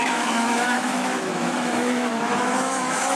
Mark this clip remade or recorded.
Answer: remade